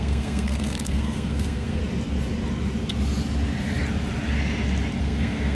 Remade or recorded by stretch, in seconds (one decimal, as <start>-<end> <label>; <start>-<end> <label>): 0.0-1.8 remade; 1.8-5.0 recorded; 5.0-5.5 remade